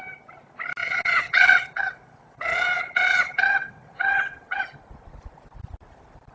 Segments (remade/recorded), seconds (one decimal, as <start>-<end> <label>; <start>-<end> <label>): 0.0-0.8 recorded; 0.8-4.6 remade; 4.6-6.3 recorded